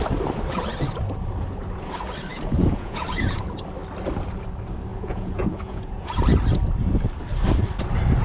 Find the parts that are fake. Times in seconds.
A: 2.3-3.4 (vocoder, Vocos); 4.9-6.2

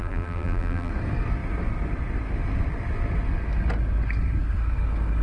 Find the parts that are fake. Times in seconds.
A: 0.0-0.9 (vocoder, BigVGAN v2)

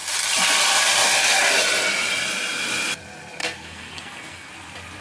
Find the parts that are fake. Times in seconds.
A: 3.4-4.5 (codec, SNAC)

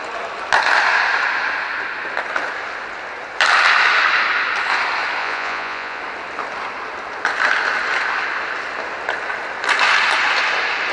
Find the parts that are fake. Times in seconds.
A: 5.2-6.0 (vocoder, Vocos)

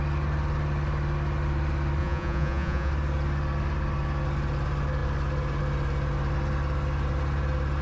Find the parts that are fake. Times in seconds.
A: 2.0-2.9 (vocoder, Vocos)